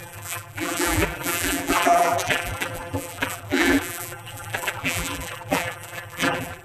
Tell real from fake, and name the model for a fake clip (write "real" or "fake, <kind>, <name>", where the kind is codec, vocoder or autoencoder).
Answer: fake, vocoder, BigVGAN v2